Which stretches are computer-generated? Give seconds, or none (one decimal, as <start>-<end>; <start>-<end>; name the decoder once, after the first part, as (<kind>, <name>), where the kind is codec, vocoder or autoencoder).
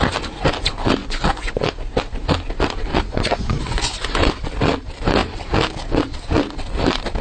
1.0-1.7 (vocoder, Vocos); 2.9-4.3